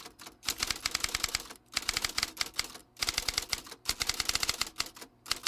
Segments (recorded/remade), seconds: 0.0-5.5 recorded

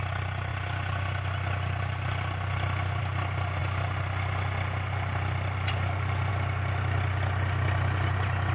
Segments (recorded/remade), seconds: 0.0-8.5 recorded